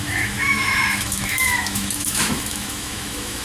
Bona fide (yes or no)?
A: no